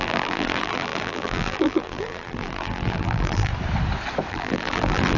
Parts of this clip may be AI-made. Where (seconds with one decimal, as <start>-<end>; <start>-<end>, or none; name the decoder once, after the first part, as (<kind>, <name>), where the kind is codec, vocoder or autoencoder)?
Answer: 0.0-3.5 (vocoder, BigVGAN v2); 4.3-5.2